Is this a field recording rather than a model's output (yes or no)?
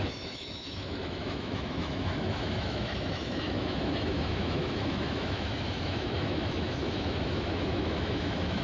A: no